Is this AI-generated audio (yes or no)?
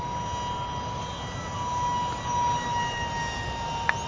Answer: no